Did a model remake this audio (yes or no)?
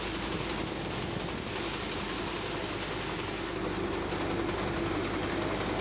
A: no